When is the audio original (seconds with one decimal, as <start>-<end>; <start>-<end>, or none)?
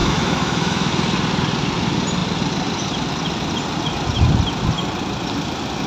0.9-5.9